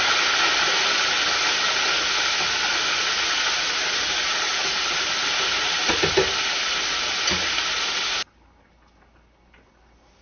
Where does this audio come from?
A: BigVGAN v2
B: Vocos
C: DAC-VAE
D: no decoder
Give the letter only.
D